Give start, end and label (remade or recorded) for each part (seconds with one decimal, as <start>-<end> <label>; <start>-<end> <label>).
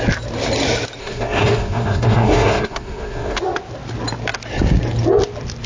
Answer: 0.0-1.0 recorded; 1.0-3.4 remade; 3.4-5.7 recorded